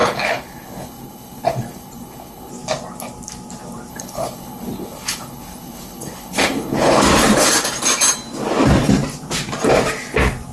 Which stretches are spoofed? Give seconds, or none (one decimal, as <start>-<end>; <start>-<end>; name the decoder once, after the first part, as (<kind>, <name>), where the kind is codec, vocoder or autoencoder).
0.0-2.5 (codec, HILCodec); 3.9-7.0